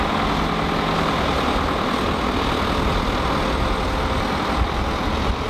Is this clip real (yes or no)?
yes